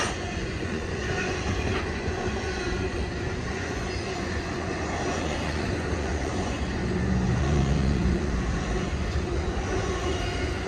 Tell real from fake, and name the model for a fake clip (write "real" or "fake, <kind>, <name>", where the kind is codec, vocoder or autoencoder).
fake, vocoder, Vocos